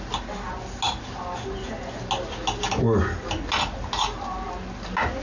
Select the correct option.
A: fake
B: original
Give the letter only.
B